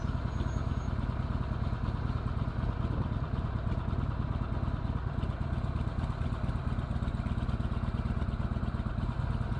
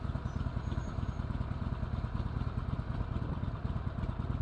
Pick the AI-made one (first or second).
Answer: second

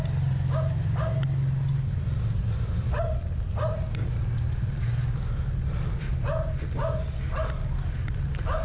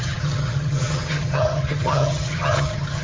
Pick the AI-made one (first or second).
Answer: second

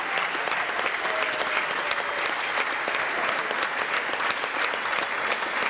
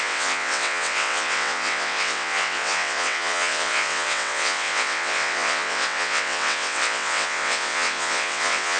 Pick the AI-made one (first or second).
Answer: second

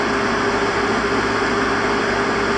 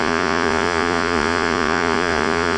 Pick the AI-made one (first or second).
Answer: second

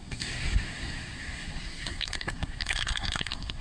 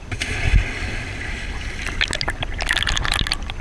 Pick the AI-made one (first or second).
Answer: first